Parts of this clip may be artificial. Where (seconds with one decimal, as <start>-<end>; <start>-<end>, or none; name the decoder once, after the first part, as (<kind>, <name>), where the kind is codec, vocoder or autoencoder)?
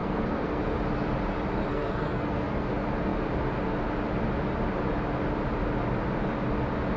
0.0-0.6 (codec, SNAC); 1.7-2.7